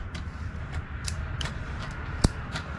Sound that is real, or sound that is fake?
fake